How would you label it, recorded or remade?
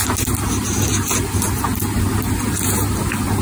recorded